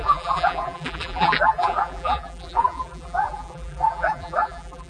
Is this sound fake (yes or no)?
yes